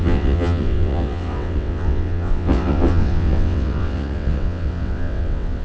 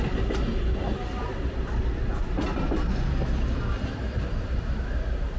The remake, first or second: first